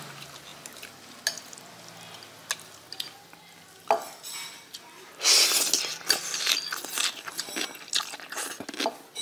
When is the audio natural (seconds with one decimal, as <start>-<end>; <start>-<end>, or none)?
0.0-5.9; 6.5-7.0; 8.5-9.2